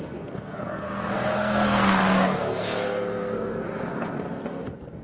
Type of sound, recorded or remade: remade